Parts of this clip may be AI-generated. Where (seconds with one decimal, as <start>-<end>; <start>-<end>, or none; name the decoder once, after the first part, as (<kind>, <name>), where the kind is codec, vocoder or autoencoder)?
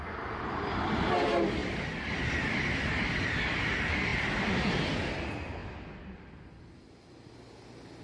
none